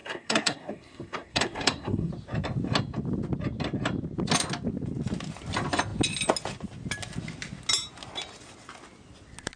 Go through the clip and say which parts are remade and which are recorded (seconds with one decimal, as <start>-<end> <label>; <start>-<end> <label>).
0.0-2.1 remade; 2.1-9.6 recorded

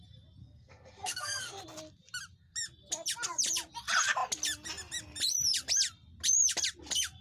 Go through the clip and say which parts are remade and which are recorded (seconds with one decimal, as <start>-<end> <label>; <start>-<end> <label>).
0.0-0.4 recorded; 0.4-1.6 remade; 1.6-7.2 recorded

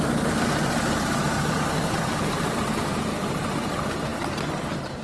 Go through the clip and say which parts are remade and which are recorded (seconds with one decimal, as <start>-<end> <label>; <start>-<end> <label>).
0.0-5.0 recorded